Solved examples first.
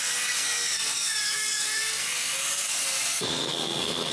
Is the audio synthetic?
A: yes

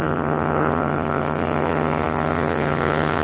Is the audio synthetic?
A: yes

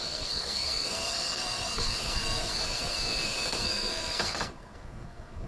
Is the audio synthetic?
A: yes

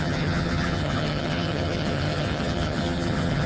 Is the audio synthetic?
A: yes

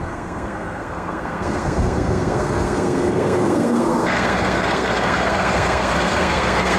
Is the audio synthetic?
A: yes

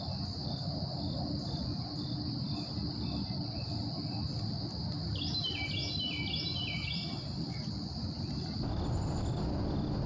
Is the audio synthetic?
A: no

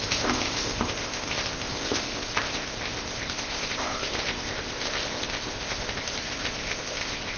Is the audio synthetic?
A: yes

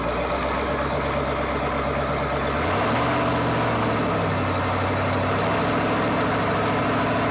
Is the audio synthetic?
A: no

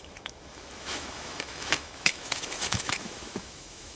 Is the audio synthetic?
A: yes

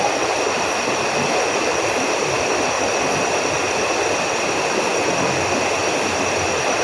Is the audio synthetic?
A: no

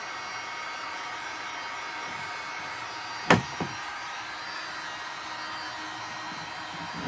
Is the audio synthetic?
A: no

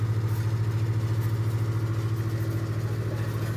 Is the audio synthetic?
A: no